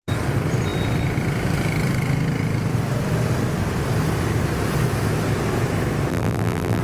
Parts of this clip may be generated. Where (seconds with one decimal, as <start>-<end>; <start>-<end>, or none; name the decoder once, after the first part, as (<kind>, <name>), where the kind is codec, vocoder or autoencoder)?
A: 6.1-6.8 (vocoder, BigVGAN v2)